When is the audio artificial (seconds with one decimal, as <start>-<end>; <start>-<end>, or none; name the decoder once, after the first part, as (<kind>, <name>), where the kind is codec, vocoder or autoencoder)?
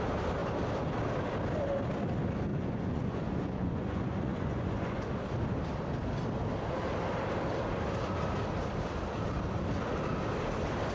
2.5-5.1 (vocoder, Vocos)